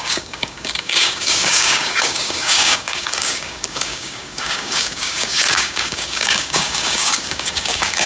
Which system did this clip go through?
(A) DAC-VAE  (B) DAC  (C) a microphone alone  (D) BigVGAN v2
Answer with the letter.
B